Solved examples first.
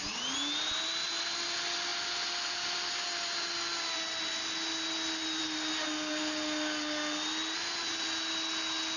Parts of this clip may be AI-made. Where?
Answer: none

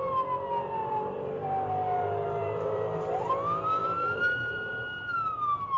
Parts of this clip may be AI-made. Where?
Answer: 0.8-3.3 (vocoder, BigVGAN v2); 3.8-4.7

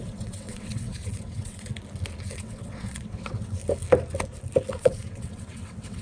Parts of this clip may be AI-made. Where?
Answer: 0.0-1.7 (vocoder, WaveNeXt); 2.2-3.6; 4.8-6.0

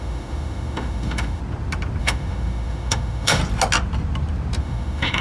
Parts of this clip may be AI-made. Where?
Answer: 0.0-1.4 (autoencoder, DAC-VAE); 2.0-3.4; 4.6-5.2